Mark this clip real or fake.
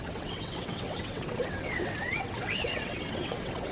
fake